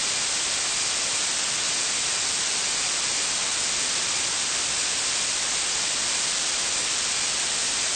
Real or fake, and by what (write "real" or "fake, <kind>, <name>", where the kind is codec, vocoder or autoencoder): real